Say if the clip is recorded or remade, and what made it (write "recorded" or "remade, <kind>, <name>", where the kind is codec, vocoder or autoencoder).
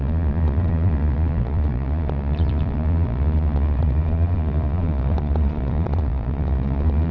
remade, vocoder, Vocos